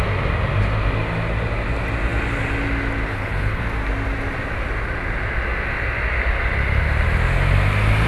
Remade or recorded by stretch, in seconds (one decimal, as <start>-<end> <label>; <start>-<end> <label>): 0.0-3.1 recorded; 3.1-3.6 remade; 3.6-8.1 recorded